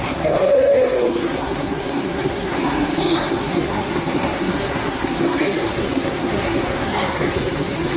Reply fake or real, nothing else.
fake